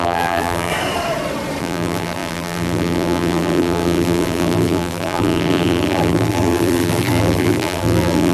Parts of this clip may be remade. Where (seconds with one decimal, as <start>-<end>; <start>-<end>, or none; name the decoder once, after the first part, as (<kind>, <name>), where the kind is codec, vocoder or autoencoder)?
0.0-0.7 (vocoder, BigVGAN v2); 1.6-8.3